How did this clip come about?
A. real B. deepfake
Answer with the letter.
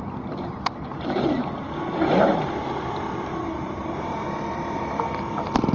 A